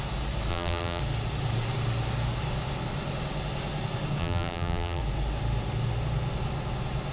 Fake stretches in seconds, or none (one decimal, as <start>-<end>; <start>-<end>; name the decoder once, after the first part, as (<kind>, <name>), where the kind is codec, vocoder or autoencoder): 0.5-1.0 (vocoder, BigVGAN v2); 4.2-5.0